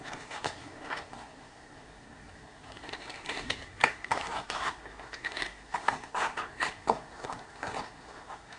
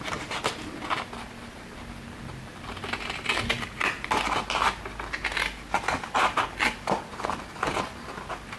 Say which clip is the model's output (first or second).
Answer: first